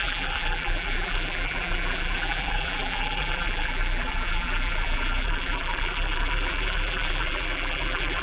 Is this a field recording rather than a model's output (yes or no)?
no